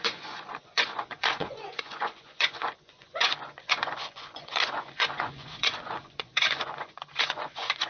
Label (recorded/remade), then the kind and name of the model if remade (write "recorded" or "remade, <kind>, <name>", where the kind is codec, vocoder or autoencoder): remade, vocoder, Vocos